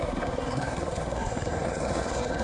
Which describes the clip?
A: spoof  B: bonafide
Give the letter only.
A